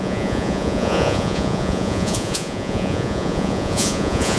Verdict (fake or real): fake